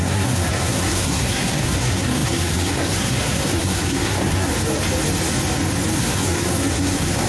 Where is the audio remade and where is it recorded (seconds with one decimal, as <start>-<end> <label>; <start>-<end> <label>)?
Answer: 0.0-4.5 remade; 4.5-6.0 recorded; 6.0-7.3 remade